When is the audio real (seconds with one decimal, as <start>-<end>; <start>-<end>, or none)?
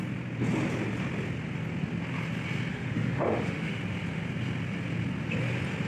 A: 0.0-2.7; 3.8-5.9